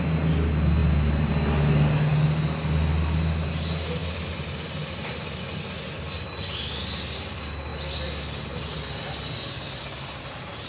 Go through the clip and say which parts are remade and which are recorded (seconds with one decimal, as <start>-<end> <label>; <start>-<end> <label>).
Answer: 0.0-0.8 recorded; 0.8-1.3 remade; 1.3-10.7 recorded